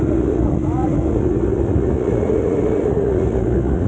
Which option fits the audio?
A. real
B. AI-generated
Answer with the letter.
B